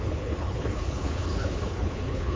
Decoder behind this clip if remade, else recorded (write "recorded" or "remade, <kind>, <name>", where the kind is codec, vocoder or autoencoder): remade, codec, HILCodec